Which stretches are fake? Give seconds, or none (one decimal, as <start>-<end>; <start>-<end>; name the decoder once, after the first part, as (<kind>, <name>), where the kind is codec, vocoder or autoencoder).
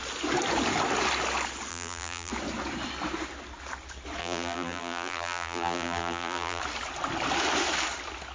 1.7-2.3 (vocoder, BigVGAN v2); 4.2-6.6